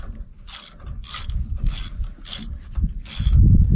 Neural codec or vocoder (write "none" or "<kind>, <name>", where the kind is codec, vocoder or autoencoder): none